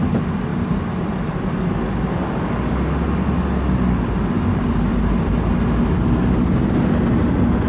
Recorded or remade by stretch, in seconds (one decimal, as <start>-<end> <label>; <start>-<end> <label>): 0.0-7.7 recorded